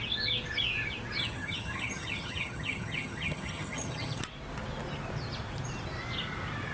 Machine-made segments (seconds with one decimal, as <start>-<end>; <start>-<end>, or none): 1.2-4.2